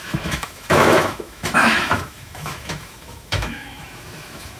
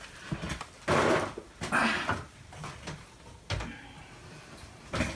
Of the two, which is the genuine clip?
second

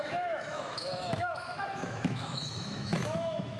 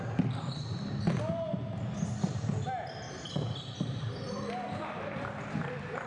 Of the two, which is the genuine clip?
second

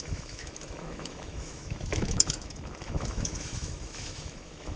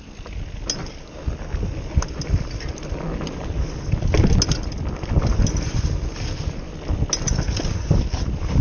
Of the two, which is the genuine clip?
second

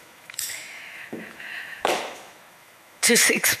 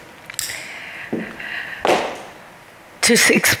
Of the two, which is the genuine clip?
second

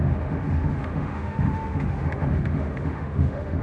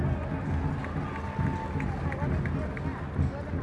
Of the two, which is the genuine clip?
second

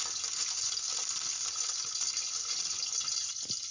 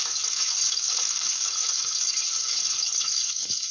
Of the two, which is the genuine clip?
first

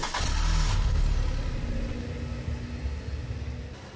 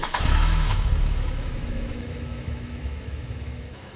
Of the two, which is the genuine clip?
first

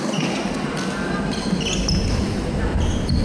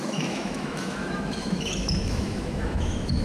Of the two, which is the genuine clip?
first